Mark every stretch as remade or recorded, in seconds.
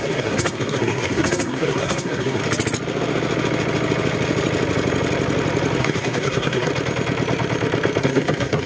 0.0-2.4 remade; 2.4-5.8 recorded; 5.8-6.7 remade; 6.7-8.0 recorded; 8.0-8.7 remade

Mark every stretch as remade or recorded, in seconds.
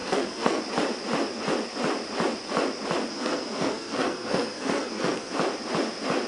0.0-0.6 remade; 0.6-3.1 recorded; 3.1-5.3 remade; 5.3-6.3 recorded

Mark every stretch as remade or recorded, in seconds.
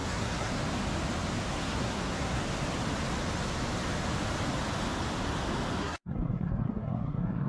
0.0-0.5 remade; 0.5-1.5 recorded; 1.5-2.4 remade; 2.4-5.8 recorded; 5.8-7.5 remade